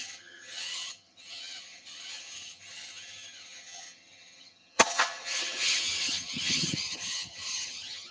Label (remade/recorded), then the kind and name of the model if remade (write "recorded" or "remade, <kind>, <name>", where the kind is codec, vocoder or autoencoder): remade, vocoder, HiFi-GAN